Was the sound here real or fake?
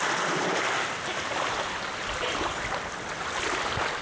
real